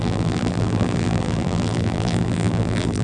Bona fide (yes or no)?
no